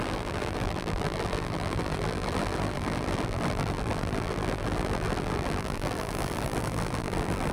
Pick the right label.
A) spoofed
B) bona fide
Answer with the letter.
A